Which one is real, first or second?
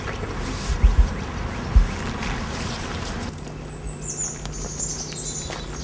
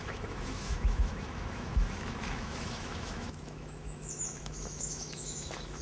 first